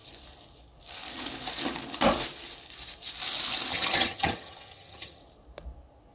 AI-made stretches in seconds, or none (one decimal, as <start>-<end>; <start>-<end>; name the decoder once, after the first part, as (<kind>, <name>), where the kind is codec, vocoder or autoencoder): 3.7-5.2 (vocoder, HiFi-GAN)